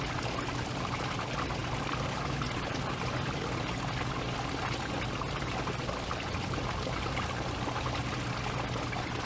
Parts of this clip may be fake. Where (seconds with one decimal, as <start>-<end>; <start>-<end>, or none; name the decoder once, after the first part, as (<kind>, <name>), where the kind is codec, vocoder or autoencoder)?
none